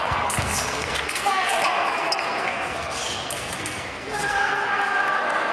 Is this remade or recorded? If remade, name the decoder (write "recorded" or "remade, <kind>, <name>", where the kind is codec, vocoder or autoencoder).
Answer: remade, codec, SNAC